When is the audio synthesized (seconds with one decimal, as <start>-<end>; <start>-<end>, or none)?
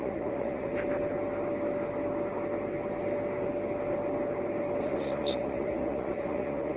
0.0-0.7; 4.8-6.8